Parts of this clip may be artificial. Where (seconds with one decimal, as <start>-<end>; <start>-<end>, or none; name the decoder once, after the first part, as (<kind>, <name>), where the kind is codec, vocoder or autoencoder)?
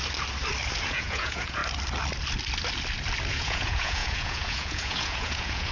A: 0.9-1.6 (vocoder, Vocos); 3.3-5.7